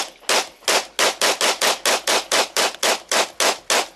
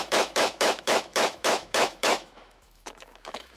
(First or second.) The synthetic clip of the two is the second